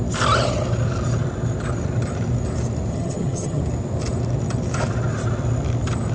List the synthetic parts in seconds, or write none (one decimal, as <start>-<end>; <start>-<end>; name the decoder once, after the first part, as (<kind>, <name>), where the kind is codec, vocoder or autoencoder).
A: 2.9-3.6 (vocoder, HiFi-GAN)